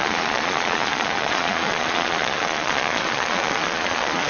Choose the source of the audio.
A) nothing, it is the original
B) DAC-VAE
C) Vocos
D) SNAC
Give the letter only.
C